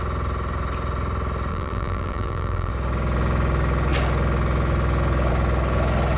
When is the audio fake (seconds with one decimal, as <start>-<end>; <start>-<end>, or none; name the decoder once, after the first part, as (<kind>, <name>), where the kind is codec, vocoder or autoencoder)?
1.5-2.7 (vocoder, BigVGAN v2)